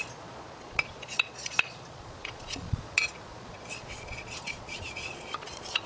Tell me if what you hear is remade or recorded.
remade